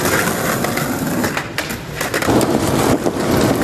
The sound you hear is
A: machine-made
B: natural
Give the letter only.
B